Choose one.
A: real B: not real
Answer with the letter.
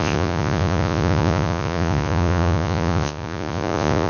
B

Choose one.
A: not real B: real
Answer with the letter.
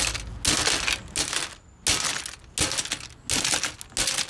B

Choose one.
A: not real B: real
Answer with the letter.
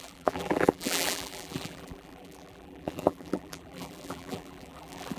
A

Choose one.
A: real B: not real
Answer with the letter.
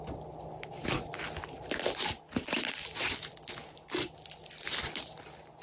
A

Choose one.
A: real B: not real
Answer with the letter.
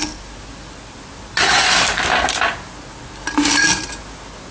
A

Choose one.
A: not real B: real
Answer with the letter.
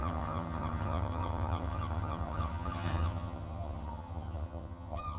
A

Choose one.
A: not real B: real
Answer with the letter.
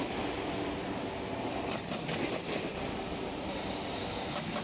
B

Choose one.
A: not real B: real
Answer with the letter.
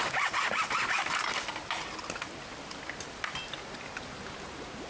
B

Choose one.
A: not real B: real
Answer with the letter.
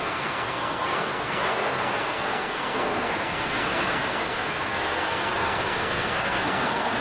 A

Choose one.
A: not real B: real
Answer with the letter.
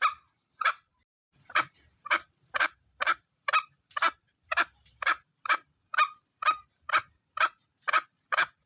A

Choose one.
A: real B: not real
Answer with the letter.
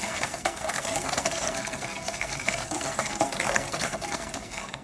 B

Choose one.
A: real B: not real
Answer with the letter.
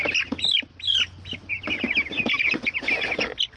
A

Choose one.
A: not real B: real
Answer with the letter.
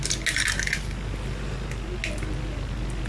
B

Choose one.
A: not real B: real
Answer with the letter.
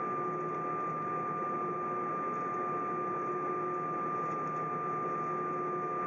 B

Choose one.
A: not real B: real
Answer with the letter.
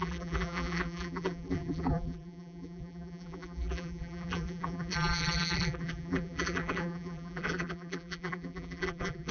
A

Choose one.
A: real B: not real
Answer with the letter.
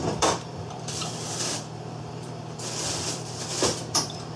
B